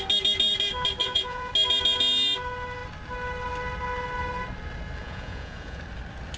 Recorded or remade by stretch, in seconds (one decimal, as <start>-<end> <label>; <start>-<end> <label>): 0.0-1.0 recorded; 1.0-1.5 remade; 1.5-5.0 recorded; 5.0-5.8 remade; 5.8-6.4 recorded